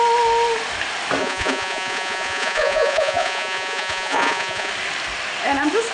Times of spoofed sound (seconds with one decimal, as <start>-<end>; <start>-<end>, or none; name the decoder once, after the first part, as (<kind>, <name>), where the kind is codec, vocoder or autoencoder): 1.2-4.7 (vocoder, Vocos)